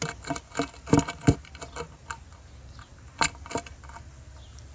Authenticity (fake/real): real